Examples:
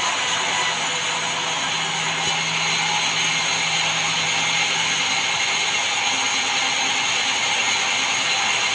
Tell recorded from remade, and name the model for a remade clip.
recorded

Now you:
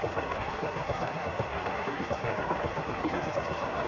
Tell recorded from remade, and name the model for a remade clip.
remade, codec, SNAC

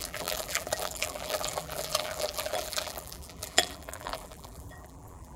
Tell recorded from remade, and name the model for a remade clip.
remade, vocoder, BigVGAN v2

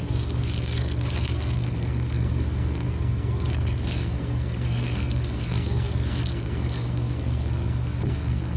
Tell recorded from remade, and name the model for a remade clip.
remade, codec, SNAC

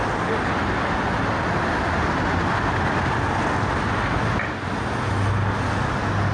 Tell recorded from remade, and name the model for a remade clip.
recorded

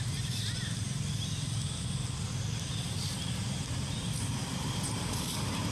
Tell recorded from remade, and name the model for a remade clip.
recorded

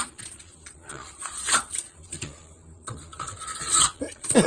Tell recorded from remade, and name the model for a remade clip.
remade, vocoder, Vocos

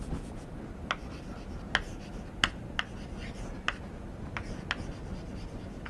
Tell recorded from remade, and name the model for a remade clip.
recorded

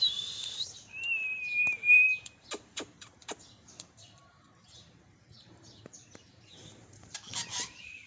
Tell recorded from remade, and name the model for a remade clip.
remade, vocoder, BigVGAN v2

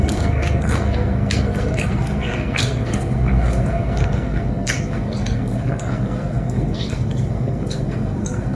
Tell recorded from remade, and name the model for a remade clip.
remade, codec, SNAC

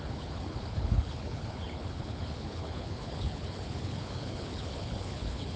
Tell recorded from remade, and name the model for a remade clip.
remade, codec, HILCodec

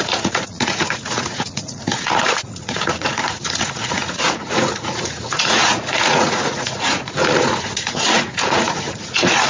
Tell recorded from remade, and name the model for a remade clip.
remade, vocoder, Vocos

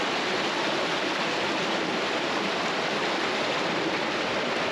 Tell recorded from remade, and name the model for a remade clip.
recorded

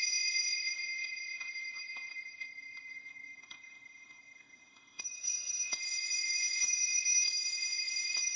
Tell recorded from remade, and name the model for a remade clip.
remade, codec, ZipCodec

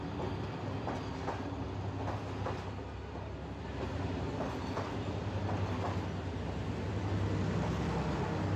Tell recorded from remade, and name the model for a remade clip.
recorded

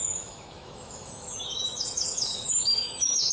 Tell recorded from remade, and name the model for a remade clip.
remade, autoencoder, DAC-VAE